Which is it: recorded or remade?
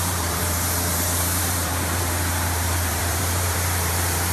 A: remade